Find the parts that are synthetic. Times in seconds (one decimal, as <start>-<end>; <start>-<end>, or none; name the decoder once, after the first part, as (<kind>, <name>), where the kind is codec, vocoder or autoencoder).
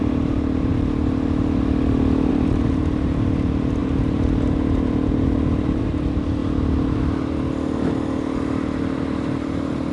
0.0-0.7 (vocoder, BigVGAN v2); 2.3-6.4; 9.4-9.9